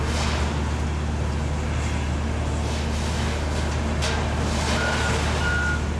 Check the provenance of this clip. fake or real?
real